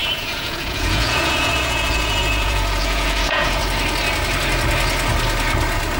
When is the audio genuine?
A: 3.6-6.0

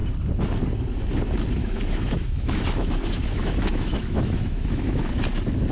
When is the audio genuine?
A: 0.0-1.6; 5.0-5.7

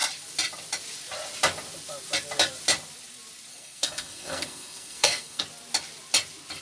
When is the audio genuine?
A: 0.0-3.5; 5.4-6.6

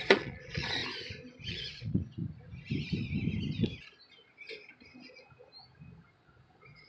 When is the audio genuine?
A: 0.8-1.5; 2.2-6.1